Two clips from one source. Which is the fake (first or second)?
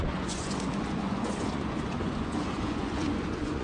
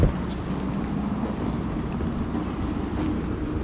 first